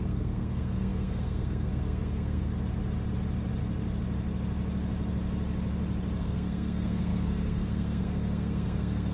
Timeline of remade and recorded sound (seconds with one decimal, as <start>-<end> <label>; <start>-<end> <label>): 0.0-2.5 remade; 2.5-6.2 recorded; 6.2-9.1 remade